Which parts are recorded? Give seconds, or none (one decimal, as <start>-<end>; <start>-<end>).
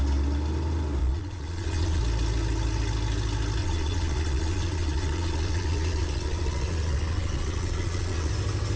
0.0-1.0; 2.0-3.6; 8.3-8.8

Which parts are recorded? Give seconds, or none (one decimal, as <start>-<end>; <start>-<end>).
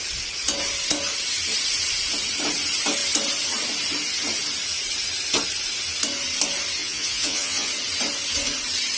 0.0-6.8; 7.7-9.0